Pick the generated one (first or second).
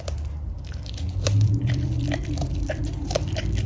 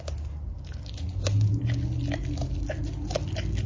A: first